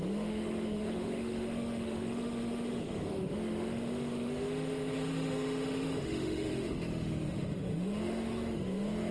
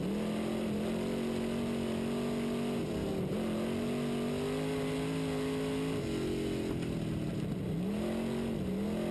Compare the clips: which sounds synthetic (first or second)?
first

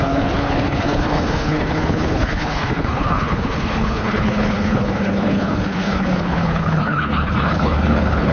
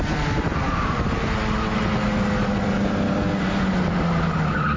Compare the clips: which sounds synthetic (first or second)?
first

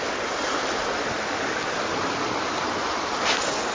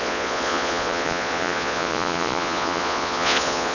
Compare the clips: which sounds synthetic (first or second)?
second